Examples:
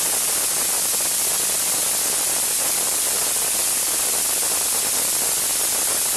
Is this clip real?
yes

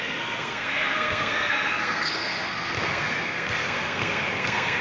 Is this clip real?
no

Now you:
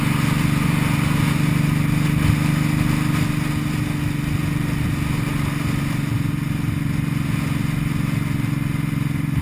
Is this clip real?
yes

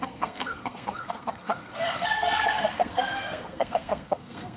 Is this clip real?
no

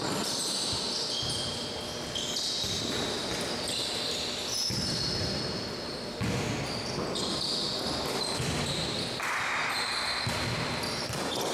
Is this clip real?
yes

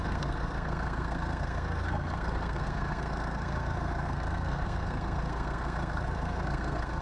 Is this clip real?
no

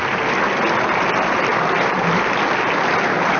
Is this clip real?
yes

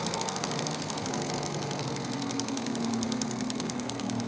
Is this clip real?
no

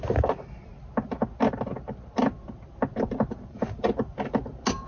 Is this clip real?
yes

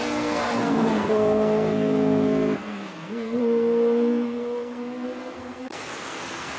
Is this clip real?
no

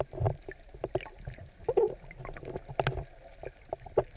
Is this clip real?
yes